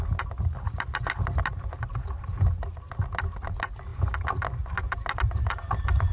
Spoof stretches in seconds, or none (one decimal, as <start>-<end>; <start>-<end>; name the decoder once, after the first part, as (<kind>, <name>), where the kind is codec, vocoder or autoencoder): none